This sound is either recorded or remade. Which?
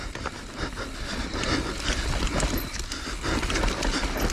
recorded